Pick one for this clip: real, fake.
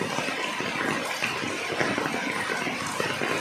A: real